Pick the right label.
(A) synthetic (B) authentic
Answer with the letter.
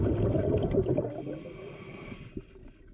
B